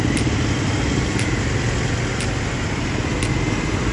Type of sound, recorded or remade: recorded